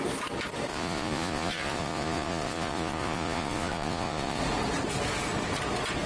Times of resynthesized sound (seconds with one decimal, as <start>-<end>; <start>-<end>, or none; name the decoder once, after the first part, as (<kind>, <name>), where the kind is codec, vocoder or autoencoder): 0.7-4.4 (vocoder, Vocos)